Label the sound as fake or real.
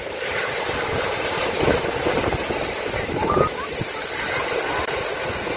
real